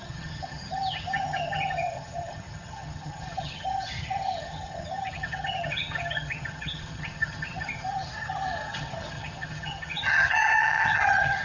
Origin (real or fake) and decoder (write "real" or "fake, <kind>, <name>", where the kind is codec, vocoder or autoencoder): fake, vocoder, HiFi-GAN